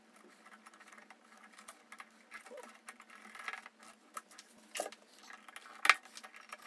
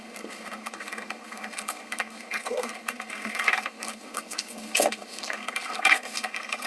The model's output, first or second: second